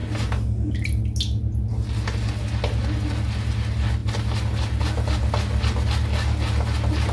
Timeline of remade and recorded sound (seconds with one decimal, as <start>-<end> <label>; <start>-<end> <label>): 0.0-7.1 recorded